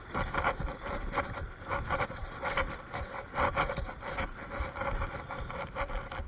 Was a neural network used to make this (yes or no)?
no